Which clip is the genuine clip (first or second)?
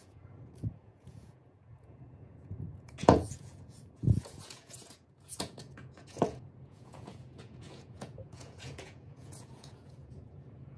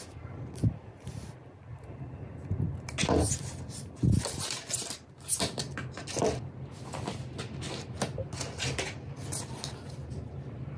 second